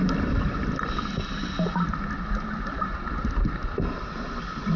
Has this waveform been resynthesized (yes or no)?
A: no